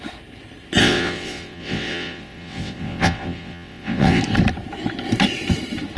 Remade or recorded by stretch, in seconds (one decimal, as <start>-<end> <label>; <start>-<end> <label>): 0.0-0.8 recorded; 0.8-4.2 remade; 4.2-6.0 recorded